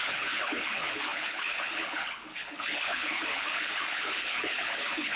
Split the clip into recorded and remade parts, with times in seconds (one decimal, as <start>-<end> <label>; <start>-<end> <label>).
0.0-5.2 remade